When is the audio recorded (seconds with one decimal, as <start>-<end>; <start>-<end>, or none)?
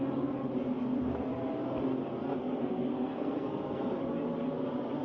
0.0-2.3; 4.0-5.0